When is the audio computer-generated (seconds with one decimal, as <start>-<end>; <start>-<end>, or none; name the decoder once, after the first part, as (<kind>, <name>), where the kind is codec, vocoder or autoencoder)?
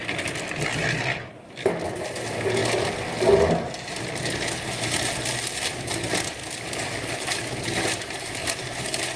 none